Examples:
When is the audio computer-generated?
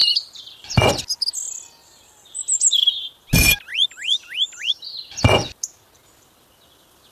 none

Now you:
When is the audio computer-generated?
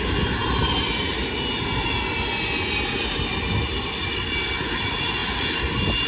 none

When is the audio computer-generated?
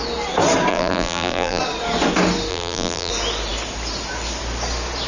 0.7-1.6 (vocoder, BigVGAN v2); 2.5-3.1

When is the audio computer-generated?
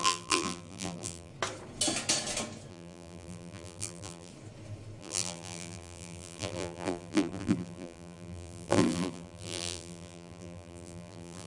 0.0-1.3 (vocoder, BigVGAN v2); 2.7-4.3; 5.0-11.5